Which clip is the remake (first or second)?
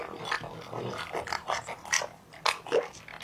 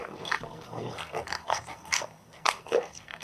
second